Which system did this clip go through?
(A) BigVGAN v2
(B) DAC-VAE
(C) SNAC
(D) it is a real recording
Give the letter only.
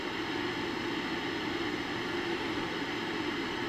A